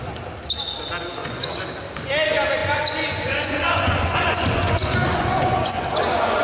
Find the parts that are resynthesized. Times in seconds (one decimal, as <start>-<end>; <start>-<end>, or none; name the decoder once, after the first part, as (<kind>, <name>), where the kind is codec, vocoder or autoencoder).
1.2-1.7 (vocoder, Vocos); 2.6-6.4